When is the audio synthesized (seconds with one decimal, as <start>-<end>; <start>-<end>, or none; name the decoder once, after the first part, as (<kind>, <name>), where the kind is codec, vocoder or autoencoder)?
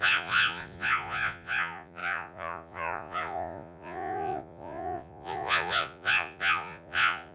0.0-7.3 (vocoder, Vocos)